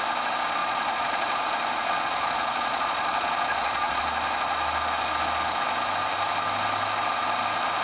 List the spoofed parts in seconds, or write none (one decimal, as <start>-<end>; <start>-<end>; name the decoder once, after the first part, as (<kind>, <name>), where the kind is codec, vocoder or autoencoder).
0.6-1.4 (vocoder, Vocos); 1.8-4.0